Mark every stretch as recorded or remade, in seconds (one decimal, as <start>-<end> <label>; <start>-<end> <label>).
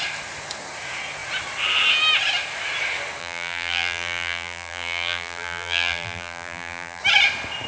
0.0-3.2 recorded; 3.2-7.0 remade; 7.0-7.7 recorded